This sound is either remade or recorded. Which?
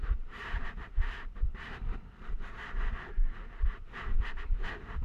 remade